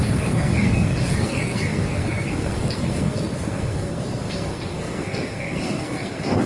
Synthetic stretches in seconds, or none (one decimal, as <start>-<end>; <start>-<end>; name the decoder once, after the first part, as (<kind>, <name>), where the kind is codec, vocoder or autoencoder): 0.0-6.5 (codec, SNAC)